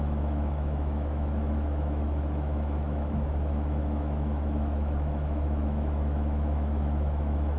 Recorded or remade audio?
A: remade